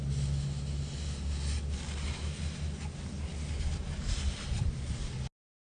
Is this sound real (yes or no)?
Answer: yes